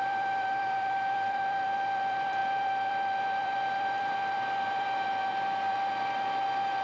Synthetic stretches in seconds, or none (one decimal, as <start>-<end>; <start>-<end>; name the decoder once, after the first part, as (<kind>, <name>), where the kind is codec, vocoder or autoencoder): 0.0-6.8 (vocoder, BigVGAN v2)